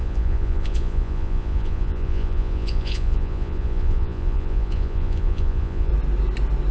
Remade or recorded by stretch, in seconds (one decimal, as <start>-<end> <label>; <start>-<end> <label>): 0.0-5.9 remade; 5.9-6.7 recorded